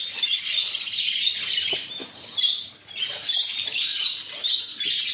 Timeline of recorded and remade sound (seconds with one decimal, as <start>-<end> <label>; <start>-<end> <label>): 0.0-5.1 recorded